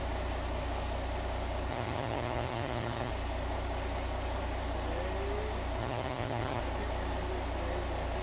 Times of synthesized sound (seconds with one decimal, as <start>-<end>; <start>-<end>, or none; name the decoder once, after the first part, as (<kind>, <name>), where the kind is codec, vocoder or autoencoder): 1.7-3.1 (vocoder, HiFi-GAN); 5.8-6.6